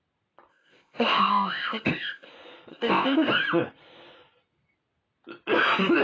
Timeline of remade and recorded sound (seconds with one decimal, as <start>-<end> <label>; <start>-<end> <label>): 0.0-0.5 recorded; 0.5-2.3 remade; 2.3-2.7 recorded; 2.7-3.3 remade; 3.3-6.0 recorded